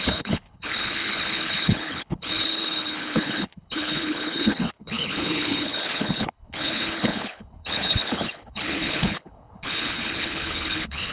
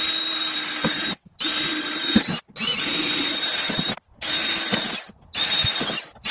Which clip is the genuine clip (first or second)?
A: second